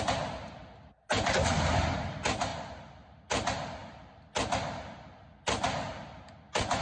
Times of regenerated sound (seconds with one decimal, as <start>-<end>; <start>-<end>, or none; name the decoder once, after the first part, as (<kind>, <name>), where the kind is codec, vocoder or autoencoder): none